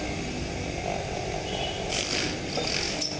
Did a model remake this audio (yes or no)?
no